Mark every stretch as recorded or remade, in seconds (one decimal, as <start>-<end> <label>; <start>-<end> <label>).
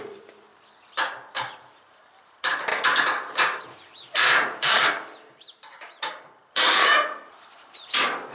0.0-0.5 remade; 0.5-1.5 recorded; 1.5-8.3 remade